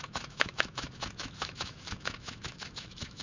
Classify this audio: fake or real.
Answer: fake